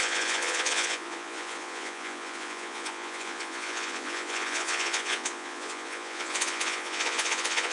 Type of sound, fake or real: fake